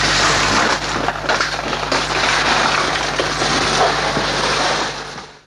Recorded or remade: recorded